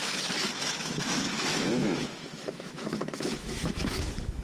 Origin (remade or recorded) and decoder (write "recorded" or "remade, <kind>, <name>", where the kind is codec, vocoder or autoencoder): remade, autoencoder, DAC-VAE